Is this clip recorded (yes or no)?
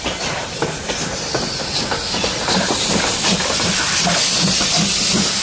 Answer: yes